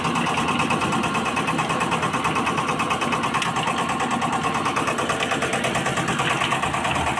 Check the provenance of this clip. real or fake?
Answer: real